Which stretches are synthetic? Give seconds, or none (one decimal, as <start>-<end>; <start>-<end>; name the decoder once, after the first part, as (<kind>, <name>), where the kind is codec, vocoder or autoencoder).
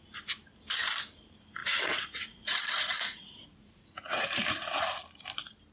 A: 1.6-5.0 (vocoder, Vocos)